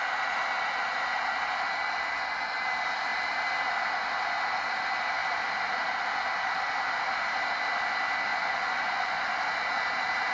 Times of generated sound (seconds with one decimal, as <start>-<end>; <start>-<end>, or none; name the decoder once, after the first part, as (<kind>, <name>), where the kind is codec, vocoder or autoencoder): 8.3-9.2 (vocoder, Vocos)